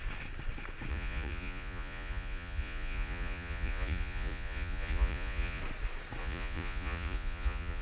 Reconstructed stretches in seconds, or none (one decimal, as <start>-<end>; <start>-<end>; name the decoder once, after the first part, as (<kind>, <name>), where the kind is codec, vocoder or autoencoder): 0.9-5.6 (vocoder, Vocos); 6.2-7.8